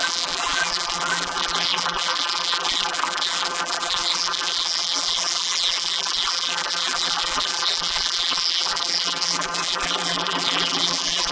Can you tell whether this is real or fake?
fake